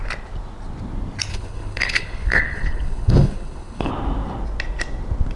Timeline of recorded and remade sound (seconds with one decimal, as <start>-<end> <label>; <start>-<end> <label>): 0.0-1.3 recorded; 1.3-3.9 remade; 3.9-5.4 recorded